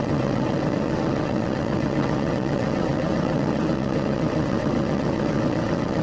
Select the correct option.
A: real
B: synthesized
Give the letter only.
B